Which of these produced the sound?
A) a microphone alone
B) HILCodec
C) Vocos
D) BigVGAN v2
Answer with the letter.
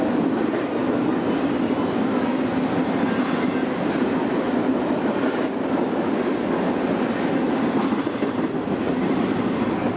A